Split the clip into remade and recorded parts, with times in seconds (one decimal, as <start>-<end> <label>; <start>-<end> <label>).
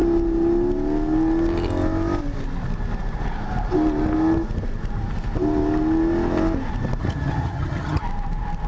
0.0-7.0 recorded; 7.0-8.0 remade; 8.0-8.7 recorded